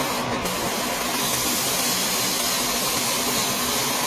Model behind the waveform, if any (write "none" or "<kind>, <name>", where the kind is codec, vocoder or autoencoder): none